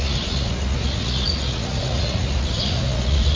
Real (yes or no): no